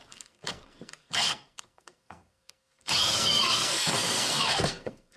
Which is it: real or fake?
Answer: fake